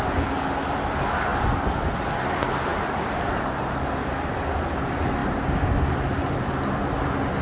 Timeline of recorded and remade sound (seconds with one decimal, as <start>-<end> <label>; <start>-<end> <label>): 0.0-2.7 recorded; 2.7-3.8 remade; 3.8-5.2 recorded; 5.2-6.2 remade; 6.2-7.4 recorded